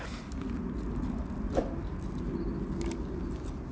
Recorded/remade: recorded